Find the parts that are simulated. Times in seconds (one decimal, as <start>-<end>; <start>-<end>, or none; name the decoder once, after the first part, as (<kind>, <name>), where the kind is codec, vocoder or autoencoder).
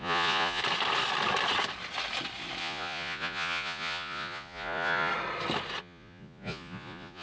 0.0-0.6 (vocoder, Vocos); 2.6-5.1; 5.8-7.2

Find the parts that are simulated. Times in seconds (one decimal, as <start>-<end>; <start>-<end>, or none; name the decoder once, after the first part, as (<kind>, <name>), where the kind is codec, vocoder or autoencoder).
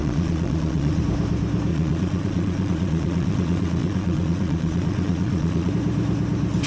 0.0-1.0 (vocoder, Vocos); 1.7-5.7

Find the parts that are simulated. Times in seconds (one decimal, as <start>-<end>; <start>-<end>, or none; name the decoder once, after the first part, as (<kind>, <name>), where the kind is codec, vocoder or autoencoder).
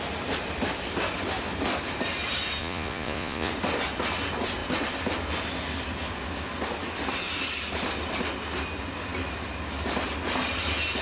2.6-3.5 (vocoder, Vocos)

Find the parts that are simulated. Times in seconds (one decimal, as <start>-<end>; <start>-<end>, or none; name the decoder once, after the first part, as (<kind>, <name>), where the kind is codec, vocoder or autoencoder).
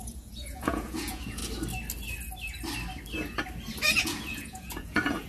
0.0-1.4 (vocoder, Vocos); 4.0-5.3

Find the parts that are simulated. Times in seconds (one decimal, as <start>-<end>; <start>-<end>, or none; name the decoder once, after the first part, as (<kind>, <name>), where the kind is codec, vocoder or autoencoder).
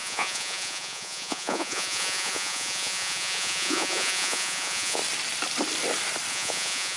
0.0-5.0 (vocoder, Vocos); 6.3-7.0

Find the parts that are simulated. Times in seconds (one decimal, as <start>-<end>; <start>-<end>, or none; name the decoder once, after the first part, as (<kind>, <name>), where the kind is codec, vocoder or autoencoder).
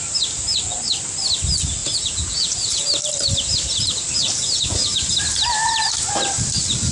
1.8-2.8 (vocoder, Vocos); 4.2-5.1